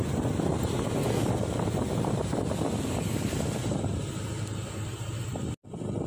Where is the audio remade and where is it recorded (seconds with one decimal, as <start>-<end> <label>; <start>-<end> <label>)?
0.0-6.1 recorded